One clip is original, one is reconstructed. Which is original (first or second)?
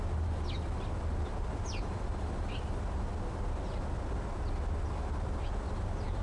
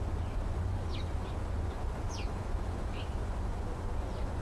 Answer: first